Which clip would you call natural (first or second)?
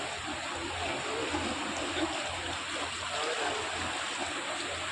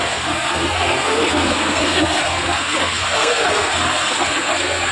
first